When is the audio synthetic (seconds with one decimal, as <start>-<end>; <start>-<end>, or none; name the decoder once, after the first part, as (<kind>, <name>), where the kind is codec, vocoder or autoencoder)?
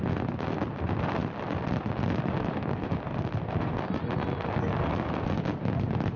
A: none